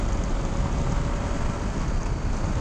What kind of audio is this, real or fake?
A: real